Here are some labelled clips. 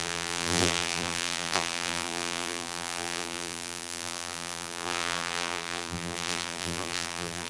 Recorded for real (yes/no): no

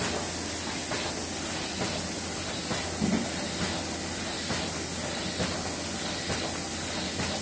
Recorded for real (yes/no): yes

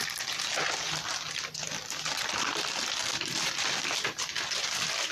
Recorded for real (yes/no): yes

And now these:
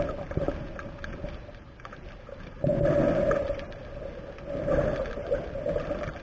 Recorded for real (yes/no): yes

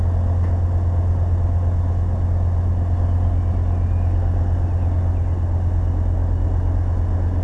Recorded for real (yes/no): yes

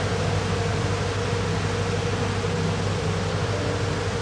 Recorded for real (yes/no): yes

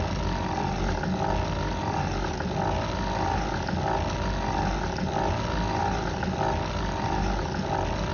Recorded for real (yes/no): yes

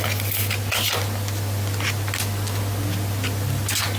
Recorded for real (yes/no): yes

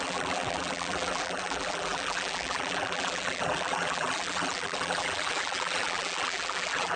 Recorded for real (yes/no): no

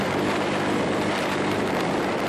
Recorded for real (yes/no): no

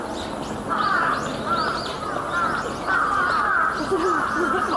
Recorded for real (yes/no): yes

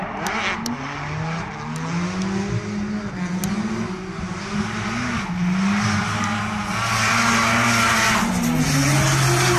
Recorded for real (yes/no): yes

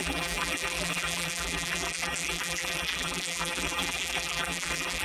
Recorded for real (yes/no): no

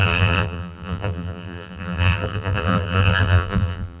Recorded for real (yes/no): no